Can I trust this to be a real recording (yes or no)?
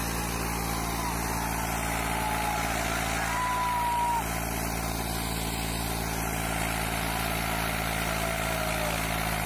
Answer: yes